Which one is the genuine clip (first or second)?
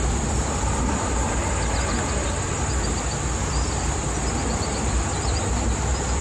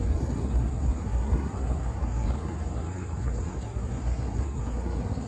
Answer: first